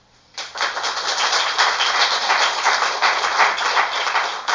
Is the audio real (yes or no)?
yes